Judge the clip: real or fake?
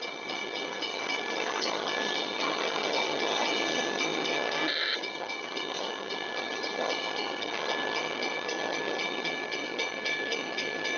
fake